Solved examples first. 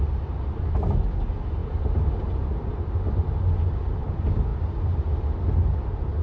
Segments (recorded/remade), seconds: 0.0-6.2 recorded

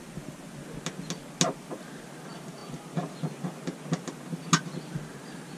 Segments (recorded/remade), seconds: 0.0-5.6 recorded